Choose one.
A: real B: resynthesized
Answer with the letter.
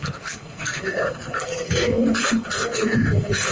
B